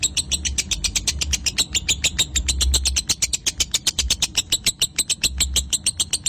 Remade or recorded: recorded